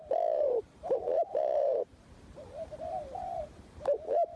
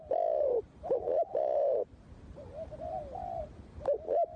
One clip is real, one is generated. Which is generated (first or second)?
first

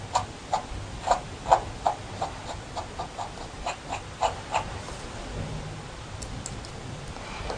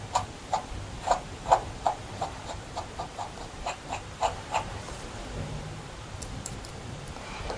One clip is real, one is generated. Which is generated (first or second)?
second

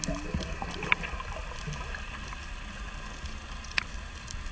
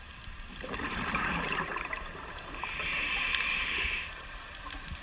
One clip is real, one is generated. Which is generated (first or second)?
second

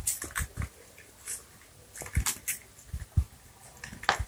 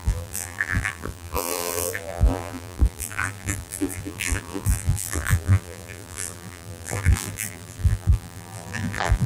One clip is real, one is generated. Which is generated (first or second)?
second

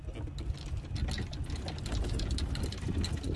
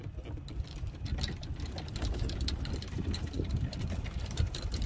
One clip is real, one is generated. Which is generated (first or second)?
second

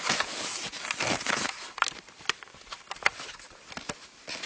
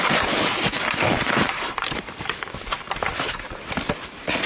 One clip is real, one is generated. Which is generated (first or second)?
second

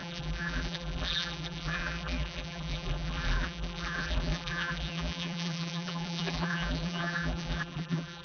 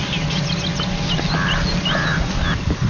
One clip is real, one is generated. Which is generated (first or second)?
first